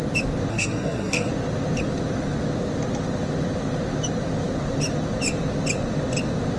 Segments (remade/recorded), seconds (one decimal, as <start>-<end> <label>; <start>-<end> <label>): 0.0-0.5 recorded; 0.5-1.3 remade; 1.3-6.6 recorded